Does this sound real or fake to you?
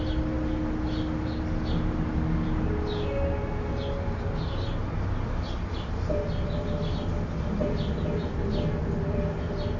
real